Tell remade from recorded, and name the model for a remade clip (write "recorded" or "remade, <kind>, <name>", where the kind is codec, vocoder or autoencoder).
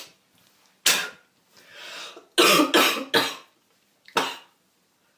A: recorded